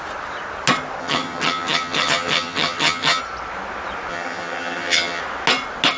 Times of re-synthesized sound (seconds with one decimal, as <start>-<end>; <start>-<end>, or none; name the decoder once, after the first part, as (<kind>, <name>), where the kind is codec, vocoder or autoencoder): 1.0-3.2 (vocoder, HiFi-GAN); 4.1-5.2